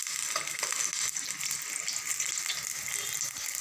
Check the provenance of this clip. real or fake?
real